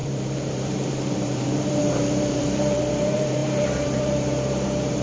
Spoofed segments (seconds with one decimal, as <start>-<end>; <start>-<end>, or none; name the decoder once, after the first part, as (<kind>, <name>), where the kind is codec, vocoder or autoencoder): 0.0-5.0 (vocoder, BigVGAN v2)